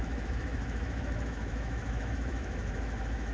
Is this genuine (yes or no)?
no